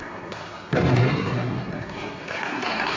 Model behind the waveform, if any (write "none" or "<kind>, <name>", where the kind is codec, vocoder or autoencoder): codec, SNAC